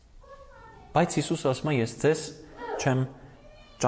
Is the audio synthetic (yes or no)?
yes